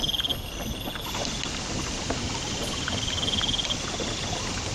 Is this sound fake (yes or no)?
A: no